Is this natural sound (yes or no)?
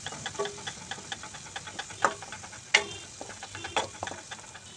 yes